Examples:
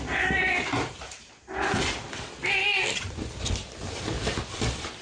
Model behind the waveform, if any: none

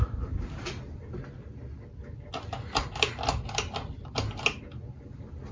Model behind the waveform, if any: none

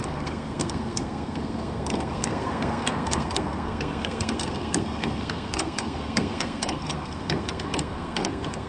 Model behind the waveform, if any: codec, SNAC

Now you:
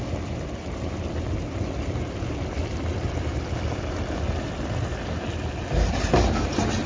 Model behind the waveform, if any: none